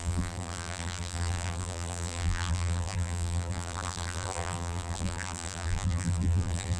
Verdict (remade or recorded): remade